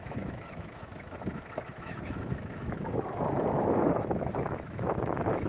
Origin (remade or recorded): remade